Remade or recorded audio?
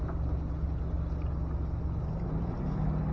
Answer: recorded